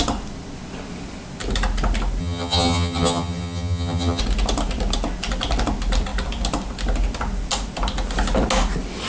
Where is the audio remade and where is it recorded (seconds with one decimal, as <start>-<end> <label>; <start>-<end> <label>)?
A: 0.0-2.2 recorded; 2.2-4.2 remade; 4.2-9.1 recorded